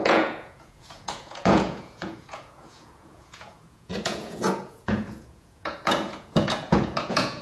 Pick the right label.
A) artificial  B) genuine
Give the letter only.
A